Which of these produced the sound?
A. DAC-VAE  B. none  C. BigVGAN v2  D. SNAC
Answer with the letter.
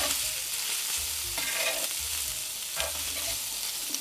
B